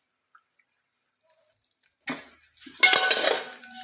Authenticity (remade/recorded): recorded